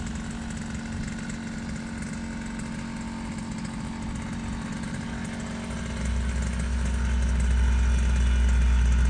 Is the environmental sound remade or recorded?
recorded